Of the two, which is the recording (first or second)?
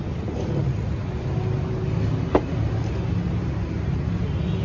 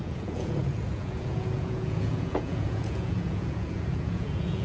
first